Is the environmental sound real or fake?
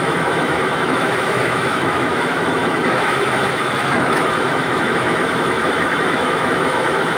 fake